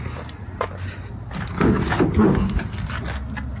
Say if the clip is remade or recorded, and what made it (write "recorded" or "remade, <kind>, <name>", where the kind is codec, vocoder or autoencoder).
recorded